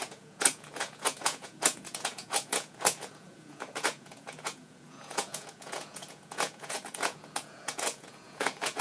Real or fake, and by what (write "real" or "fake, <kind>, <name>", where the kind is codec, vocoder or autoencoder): fake, vocoder, Vocos